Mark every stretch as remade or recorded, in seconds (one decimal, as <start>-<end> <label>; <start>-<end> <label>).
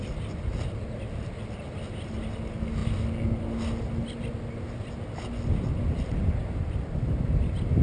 0.0-7.8 recorded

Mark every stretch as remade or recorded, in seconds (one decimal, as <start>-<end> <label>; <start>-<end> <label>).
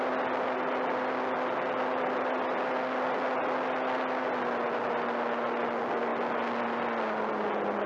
0.0-7.9 recorded